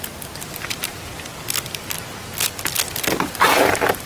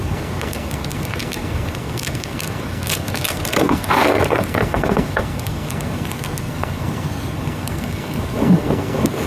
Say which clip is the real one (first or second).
first